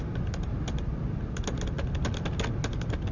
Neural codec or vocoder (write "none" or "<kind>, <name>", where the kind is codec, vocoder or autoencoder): none